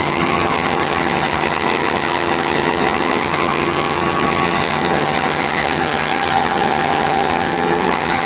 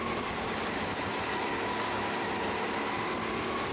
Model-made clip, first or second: first